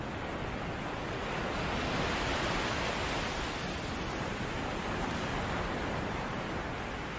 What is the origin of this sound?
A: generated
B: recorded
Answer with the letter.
B